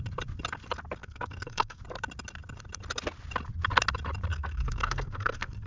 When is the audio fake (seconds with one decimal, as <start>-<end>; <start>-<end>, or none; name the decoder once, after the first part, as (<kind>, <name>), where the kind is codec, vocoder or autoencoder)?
1.0-1.8 (codec, SNAC); 4.3-5.7